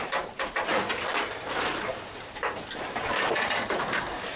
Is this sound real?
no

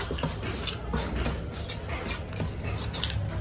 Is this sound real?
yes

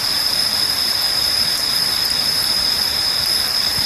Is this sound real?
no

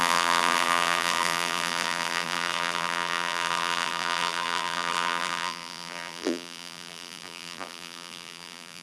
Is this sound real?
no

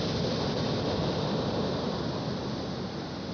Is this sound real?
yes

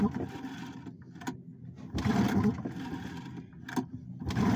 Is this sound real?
yes